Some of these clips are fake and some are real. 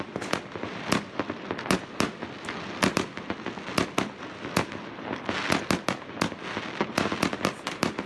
real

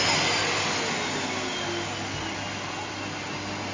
real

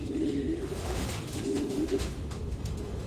fake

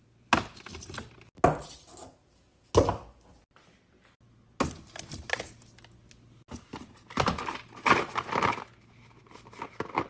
real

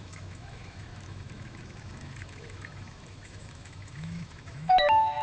fake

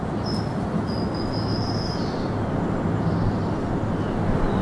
real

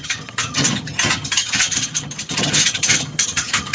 fake